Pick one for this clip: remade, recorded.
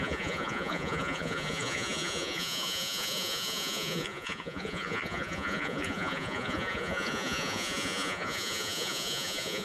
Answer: remade